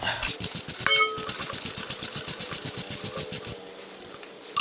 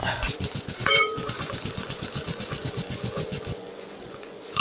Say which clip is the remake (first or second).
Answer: second